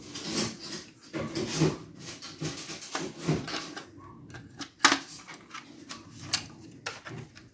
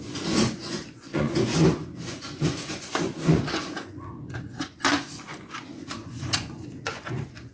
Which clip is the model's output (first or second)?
second